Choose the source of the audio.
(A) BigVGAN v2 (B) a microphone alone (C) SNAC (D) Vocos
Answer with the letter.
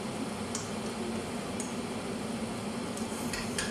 B